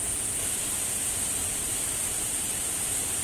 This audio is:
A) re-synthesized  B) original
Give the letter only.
B